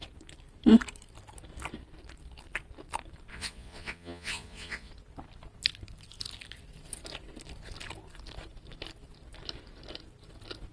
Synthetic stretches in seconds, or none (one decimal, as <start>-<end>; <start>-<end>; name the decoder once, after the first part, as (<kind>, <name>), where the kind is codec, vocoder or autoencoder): 3.3-4.9 (vocoder, Vocos)

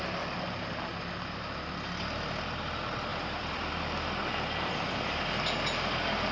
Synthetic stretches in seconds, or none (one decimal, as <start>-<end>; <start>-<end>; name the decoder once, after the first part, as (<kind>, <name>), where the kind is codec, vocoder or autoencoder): 3.1-3.7 (vocoder, BigVGAN v2)